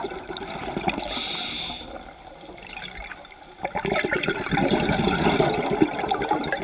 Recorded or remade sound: recorded